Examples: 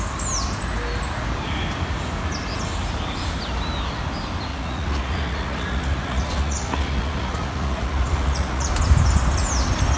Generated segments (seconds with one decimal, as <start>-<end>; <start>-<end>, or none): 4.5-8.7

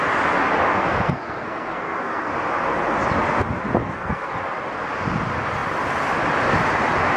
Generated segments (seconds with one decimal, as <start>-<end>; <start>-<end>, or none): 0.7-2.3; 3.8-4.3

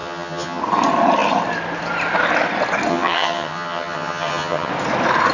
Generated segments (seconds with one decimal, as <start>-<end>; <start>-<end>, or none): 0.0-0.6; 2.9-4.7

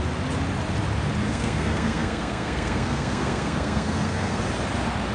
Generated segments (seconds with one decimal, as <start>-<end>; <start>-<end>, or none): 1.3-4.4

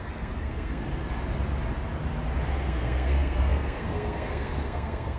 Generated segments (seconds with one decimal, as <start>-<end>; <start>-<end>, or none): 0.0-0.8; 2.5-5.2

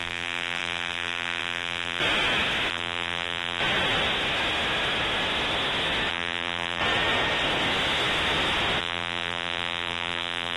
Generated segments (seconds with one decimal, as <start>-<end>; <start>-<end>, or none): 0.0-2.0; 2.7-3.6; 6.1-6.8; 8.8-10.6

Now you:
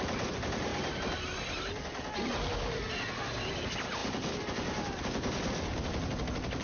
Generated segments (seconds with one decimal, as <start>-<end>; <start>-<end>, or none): none

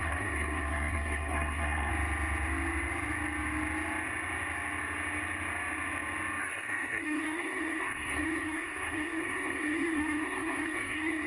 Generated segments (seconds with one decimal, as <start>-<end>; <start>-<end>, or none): 0.0-1.9; 6.4-11.3